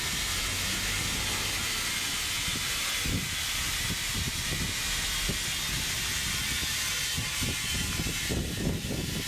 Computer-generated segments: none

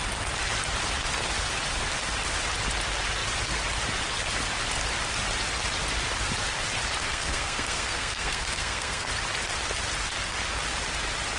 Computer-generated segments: 7.1-9.1 (codec, SNAC)

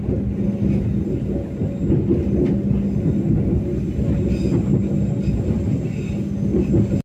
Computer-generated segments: none

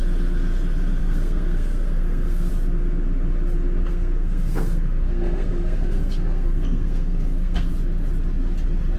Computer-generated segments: 1.0-2.5 (codec, SNAC); 3.9-7.7